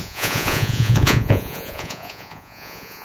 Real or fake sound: fake